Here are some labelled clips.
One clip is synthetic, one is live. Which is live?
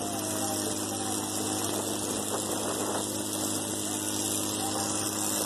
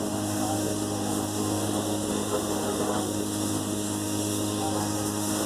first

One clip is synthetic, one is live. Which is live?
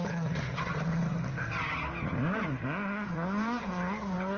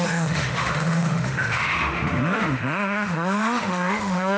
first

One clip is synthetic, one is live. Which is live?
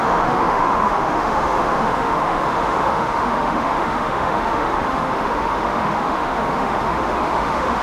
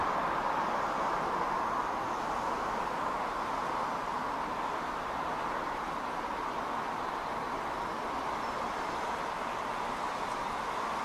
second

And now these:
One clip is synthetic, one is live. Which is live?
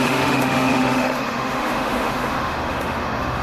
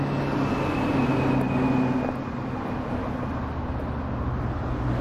second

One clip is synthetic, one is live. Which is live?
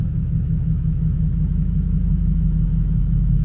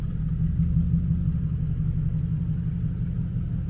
second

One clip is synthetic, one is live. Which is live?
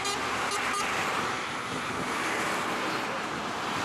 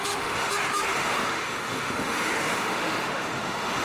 first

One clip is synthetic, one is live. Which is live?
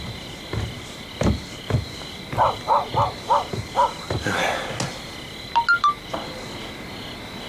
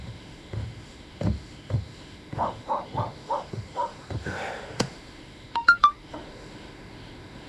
first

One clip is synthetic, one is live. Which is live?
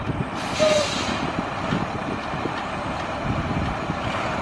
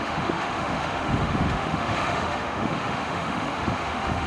first